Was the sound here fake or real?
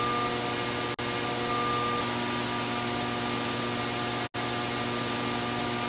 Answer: real